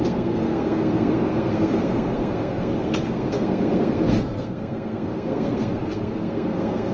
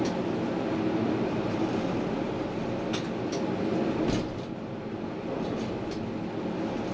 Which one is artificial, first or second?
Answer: first